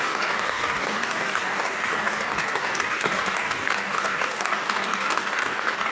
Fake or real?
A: fake